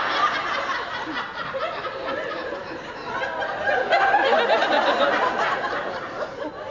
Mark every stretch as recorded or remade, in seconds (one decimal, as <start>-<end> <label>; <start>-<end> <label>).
0.0-6.7 recorded